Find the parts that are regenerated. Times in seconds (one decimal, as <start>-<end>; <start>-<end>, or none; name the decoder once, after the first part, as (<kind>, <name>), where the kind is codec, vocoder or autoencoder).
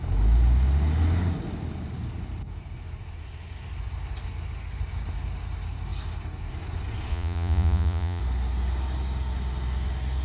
7.1-8.2 (vocoder, Vocos)